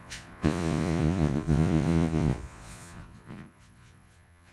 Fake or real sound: fake